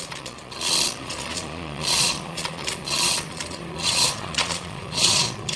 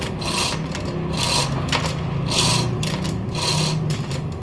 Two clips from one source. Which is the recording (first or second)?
second